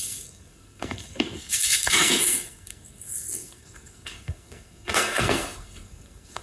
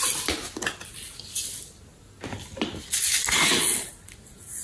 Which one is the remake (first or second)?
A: first